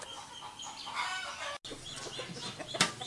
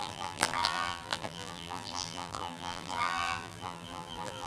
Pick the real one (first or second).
first